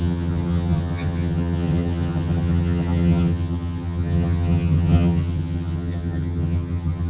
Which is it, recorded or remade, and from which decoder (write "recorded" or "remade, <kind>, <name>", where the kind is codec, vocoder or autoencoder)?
remade, vocoder, HiFi-GAN